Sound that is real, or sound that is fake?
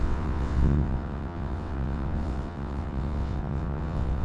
fake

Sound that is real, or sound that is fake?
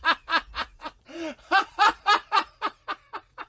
fake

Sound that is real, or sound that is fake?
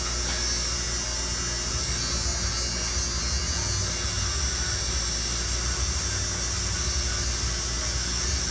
real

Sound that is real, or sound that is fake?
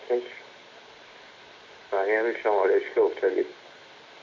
real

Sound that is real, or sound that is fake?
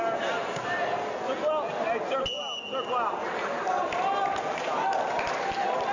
real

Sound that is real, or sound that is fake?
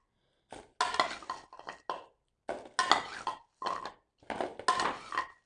real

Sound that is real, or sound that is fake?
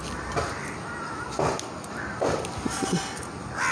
real